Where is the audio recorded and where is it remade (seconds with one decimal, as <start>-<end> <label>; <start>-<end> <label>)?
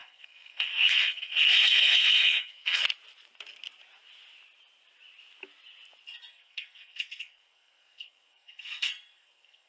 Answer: 0.0-2.8 remade; 2.8-6.3 recorded; 6.3-9.7 remade